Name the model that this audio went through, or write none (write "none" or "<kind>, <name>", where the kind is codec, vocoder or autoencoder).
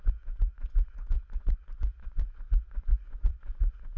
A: vocoder, Vocos